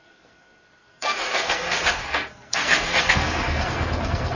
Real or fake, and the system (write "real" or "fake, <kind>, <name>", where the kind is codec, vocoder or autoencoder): fake, codec, SNAC